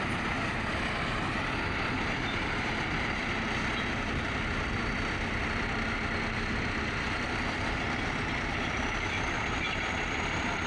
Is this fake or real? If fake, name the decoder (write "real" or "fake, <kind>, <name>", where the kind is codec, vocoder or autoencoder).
fake, vocoder, BigVGAN v2